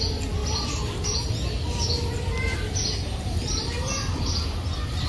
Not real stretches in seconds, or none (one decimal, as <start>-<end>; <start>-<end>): none